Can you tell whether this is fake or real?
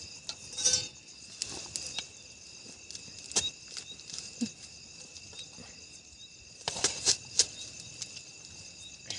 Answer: real